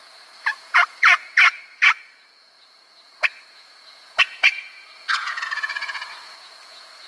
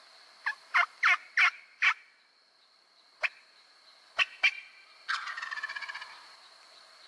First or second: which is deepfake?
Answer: first